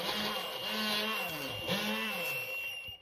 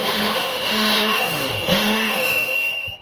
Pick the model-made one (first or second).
second